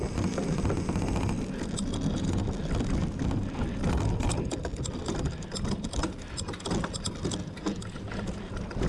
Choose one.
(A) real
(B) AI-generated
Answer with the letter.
A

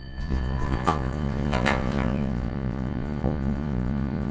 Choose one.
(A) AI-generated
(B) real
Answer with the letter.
A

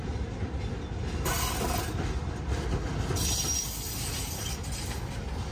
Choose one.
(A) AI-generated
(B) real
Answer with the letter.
B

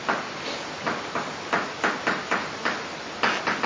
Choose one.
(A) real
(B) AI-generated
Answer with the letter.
A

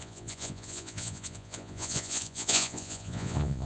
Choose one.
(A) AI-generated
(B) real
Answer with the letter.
A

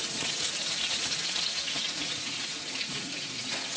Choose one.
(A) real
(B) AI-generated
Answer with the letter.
B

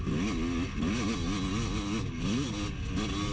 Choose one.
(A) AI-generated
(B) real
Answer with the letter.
B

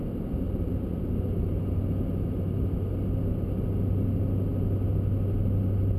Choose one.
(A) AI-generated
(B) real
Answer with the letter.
B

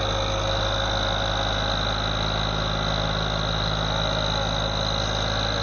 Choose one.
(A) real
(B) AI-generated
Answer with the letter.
A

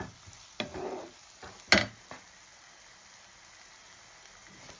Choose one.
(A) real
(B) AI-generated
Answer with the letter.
A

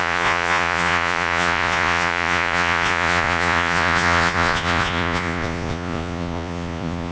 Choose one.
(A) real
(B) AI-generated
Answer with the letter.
B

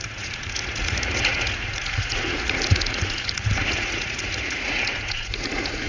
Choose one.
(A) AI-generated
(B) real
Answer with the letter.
A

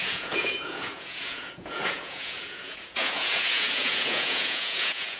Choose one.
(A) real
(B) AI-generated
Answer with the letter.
B